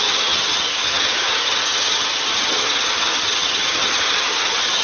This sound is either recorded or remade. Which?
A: remade